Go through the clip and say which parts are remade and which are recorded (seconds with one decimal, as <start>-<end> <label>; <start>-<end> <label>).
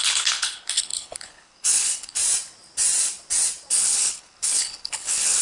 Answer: 0.0-2.2 remade; 2.2-3.7 recorded; 3.7-5.4 remade